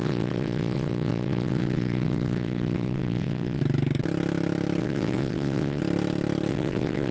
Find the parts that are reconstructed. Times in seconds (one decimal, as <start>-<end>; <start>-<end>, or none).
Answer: 0.0-3.6; 4.8-5.8; 6.5-7.1